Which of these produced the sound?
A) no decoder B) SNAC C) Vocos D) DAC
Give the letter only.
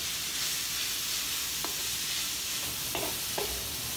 A